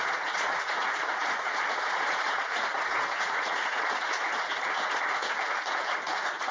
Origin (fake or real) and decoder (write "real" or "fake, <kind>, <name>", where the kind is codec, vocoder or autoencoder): fake, vocoder, Vocos